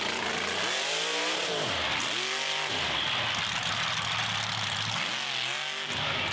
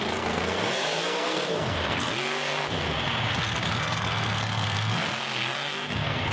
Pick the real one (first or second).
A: first